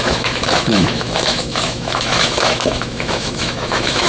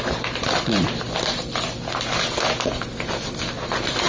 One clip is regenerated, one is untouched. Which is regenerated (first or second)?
first